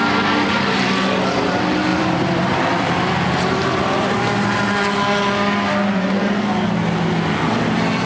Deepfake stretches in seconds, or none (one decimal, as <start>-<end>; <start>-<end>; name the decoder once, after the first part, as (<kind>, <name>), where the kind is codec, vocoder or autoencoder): 1.9-2.9 (vocoder, BigVGAN v2)